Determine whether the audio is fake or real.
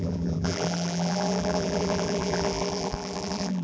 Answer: fake